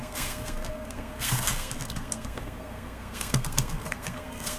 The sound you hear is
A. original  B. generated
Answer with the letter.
B